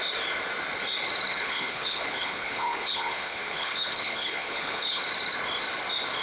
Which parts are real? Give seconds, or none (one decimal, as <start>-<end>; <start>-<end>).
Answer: 0.0-1.3; 5.0-6.2